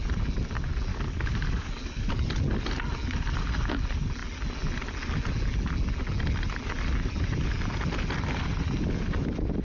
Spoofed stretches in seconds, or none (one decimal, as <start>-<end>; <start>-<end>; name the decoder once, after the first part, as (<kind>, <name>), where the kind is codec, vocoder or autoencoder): 0.9-2.1 (codec, DAC)